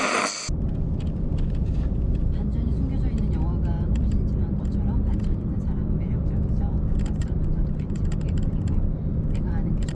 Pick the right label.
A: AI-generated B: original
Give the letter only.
A